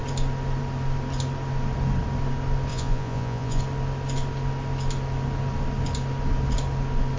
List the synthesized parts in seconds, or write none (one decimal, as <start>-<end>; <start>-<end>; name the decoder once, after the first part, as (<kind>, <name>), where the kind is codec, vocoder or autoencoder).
2.7-3.6 (vocoder, Vocos)

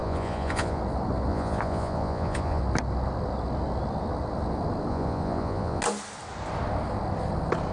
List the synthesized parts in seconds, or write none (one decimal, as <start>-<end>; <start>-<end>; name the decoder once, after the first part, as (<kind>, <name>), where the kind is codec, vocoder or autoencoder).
0.0-0.8 (vocoder, Vocos); 1.3-2.6; 4.9-5.8

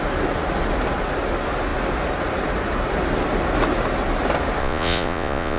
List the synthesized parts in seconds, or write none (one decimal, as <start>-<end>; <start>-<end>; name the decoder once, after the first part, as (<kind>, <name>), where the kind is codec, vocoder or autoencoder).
4.6-5.6 (vocoder, Vocos)

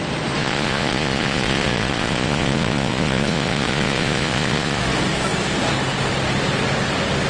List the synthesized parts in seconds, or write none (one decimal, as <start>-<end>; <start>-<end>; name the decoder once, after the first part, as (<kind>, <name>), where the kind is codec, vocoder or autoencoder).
0.4-4.8 (vocoder, Vocos)

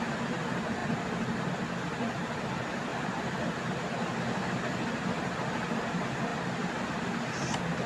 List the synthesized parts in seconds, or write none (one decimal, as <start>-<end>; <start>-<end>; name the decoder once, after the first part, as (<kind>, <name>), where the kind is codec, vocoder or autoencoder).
none

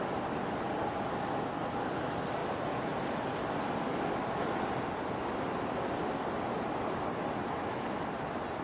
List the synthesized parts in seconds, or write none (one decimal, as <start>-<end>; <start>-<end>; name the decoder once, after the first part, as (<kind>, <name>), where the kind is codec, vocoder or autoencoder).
none

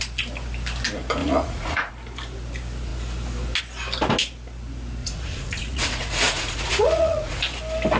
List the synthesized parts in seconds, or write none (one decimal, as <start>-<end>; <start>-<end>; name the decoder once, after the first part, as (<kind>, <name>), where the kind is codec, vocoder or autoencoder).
1.2-1.9 (vocoder, Vocos); 5.0-7.4